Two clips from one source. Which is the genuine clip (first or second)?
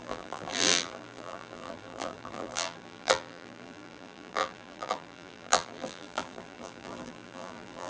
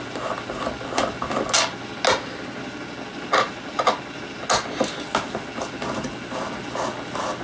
second